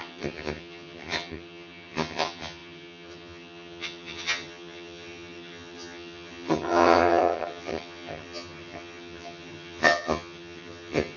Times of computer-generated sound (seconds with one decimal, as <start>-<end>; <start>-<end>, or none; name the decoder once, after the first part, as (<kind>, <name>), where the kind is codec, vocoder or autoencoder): 0.0-11.2 (vocoder, HiFi-GAN)